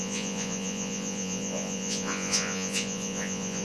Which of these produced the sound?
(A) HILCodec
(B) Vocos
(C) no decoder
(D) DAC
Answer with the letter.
B